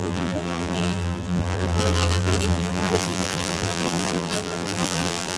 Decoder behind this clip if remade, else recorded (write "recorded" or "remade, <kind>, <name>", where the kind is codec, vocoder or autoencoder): remade, vocoder, BigVGAN v2